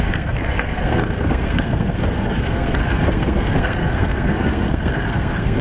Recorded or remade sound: remade